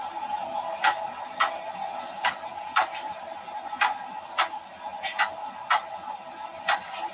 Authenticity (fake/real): real